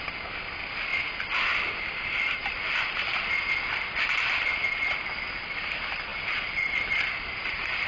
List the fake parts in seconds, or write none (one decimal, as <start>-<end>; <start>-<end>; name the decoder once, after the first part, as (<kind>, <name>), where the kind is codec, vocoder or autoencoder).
none

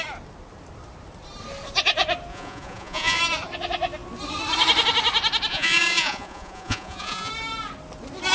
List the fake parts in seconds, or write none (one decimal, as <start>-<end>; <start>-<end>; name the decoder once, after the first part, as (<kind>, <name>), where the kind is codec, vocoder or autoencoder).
2.3-3.2 (vocoder, Vocos); 5.5-7.3

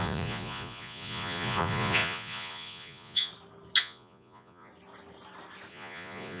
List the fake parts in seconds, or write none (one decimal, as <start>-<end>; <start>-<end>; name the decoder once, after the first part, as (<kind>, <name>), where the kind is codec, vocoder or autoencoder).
0.0-3.3 (vocoder, Vocos); 3.8-4.7; 5.7-6.4

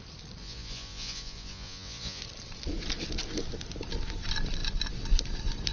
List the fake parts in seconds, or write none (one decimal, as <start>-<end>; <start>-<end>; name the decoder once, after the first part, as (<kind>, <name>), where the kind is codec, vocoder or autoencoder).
0.4-2.2 (vocoder, Vocos)

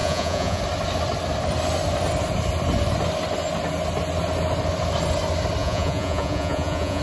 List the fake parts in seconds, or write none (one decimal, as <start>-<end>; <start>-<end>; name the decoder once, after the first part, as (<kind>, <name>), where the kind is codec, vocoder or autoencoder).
0.0-0.6 (vocoder, Vocos); 5.6-7.0

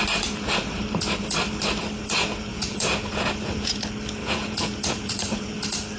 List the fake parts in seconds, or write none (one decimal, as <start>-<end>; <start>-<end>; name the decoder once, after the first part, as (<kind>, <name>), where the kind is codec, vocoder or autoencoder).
2.5-3.8 (vocoder, Vocos); 4.2-5.5

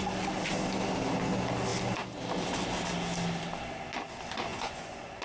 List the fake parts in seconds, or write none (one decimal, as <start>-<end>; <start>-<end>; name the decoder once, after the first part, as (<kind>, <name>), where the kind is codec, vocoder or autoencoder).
4.5-5.2 (vocoder, Vocos)

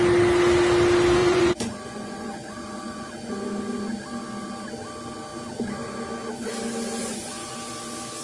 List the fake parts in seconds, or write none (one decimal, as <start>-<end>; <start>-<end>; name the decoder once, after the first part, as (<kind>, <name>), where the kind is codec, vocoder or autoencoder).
1.2-3.3 (vocoder, Vocos); 7.0-7.5